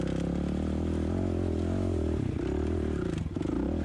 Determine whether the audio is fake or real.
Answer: real